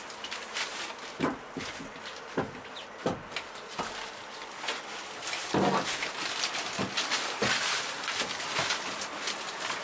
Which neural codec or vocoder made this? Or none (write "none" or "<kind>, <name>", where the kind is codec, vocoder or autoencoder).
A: none